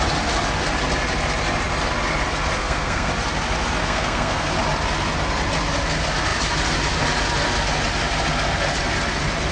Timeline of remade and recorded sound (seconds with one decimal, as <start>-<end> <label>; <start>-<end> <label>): 0.0-2.6 recorded; 2.6-3.1 remade; 3.1-3.8 recorded; 3.8-4.5 remade; 4.5-9.5 recorded

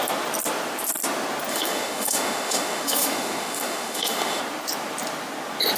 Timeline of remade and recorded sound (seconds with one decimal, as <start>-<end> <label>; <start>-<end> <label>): 0.0-1.5 recorded; 1.5-4.4 remade; 4.4-5.8 recorded

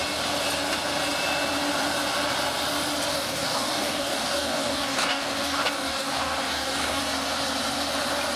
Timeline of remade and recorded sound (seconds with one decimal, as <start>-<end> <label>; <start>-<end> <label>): 0.0-3.1 recorded; 3.1-7.0 remade; 7.0-8.4 recorded

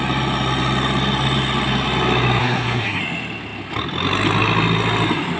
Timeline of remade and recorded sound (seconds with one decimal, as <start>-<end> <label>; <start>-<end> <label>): 0.0-2.4 recorded; 2.4-3.0 remade; 3.0-5.4 recorded

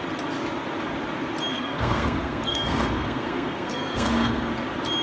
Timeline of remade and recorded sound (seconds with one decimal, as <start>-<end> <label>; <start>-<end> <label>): 0.0-1.5 recorded; 1.5-4.5 remade; 4.5-5.0 recorded

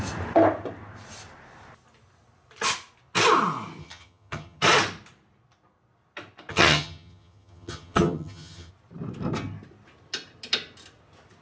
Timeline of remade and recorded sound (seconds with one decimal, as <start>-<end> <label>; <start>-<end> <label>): 0.0-3.8 recorded; 3.8-4.6 remade; 4.6-6.5 recorded; 6.5-8.7 remade; 8.7-11.4 recorded